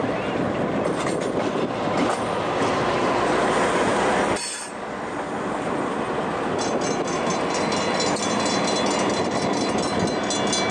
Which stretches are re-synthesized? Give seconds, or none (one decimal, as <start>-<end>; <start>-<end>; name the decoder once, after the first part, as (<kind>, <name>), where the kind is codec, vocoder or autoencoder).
none

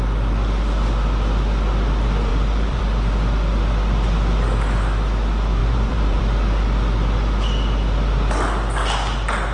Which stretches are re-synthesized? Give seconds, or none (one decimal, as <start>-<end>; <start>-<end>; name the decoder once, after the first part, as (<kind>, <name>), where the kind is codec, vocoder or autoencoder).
2.3-2.8 (vocoder, BigVGAN v2); 5.6-6.2

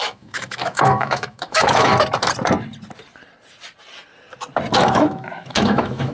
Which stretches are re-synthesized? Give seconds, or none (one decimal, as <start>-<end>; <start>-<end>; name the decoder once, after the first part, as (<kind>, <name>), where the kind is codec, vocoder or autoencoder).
0.0-1.9 (autoencoder, DAC-VAE); 4.8-6.1

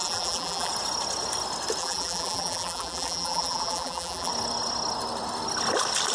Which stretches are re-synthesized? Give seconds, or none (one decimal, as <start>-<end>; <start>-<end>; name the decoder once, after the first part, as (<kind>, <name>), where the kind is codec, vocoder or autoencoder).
0.0-0.7 (vocoder, BigVGAN v2); 1.8-4.3

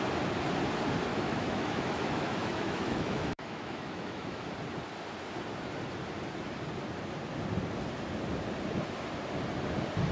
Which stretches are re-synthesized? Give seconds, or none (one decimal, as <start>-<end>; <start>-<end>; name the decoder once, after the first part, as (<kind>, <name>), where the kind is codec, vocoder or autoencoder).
1.1-4.4 (autoencoder, DAC-VAE)